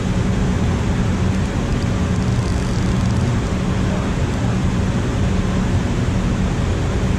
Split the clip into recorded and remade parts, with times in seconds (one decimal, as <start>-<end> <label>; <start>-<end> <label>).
0.0-7.2 recorded